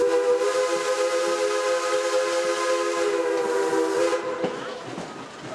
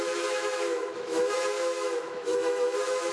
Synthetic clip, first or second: second